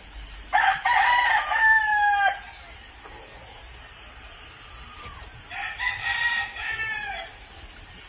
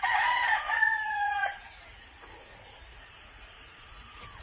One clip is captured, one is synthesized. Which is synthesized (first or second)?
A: second